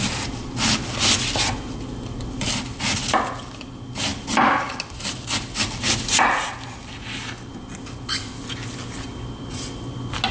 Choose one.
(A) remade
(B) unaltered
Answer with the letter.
B